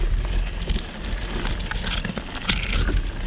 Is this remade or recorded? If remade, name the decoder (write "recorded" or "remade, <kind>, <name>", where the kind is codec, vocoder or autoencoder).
recorded